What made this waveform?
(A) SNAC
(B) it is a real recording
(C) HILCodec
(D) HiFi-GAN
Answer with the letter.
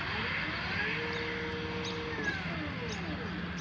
B